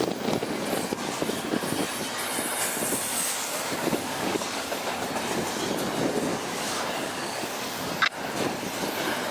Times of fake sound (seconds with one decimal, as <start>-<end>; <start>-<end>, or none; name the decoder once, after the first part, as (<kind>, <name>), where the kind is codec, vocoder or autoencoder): 3.1-5.1 (codec, DAC); 6.3-7.9